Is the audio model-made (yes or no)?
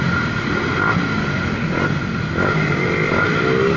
no